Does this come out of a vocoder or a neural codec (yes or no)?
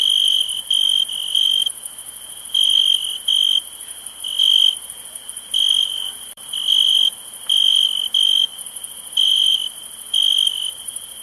yes